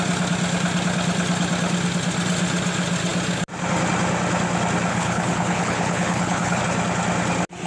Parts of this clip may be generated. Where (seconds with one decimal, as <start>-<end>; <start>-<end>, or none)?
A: 4.9-6.6